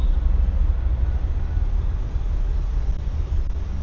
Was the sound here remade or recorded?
recorded